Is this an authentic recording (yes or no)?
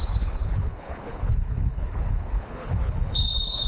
no